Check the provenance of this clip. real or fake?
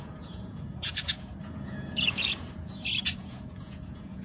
fake